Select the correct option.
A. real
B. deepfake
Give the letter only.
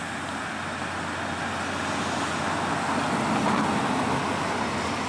A